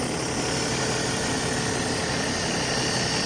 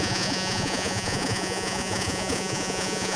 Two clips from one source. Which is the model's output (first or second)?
second